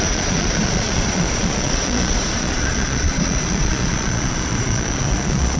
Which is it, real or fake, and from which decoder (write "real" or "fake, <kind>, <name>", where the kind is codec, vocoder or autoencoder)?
fake, vocoder, Vocos